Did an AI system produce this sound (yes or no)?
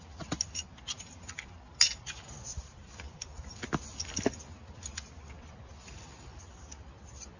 no